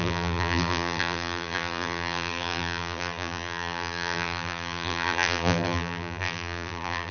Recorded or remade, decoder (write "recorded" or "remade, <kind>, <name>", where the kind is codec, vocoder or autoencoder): remade, vocoder, BigVGAN v2